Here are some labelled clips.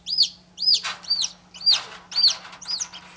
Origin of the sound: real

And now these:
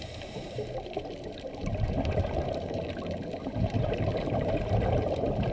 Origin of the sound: fake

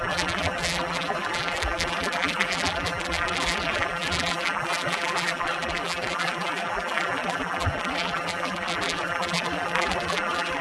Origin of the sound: fake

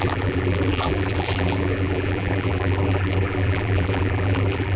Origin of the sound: fake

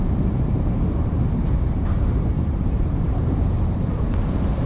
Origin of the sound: fake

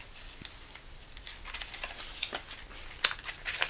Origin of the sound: real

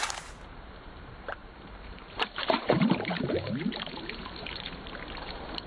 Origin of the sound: fake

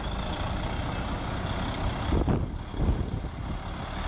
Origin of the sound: real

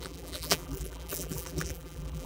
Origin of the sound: fake